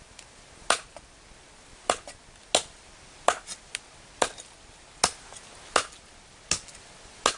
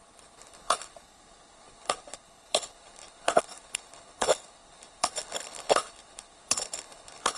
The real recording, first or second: first